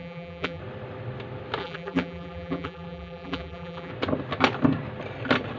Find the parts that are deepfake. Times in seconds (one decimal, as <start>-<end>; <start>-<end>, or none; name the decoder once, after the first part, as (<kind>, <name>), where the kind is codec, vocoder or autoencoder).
0.0-0.6 (vocoder, BigVGAN v2); 1.6-3.9